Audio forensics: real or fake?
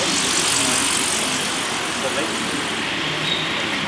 real